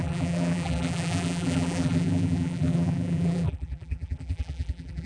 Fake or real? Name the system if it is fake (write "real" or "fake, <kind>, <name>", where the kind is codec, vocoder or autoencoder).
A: fake, vocoder, BigVGAN v2